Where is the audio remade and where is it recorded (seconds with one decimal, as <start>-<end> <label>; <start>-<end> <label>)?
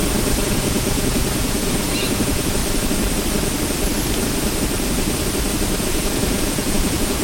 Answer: 0.0-0.5 recorded; 0.5-2.6 remade; 2.6-5.8 recorded; 5.8-7.2 remade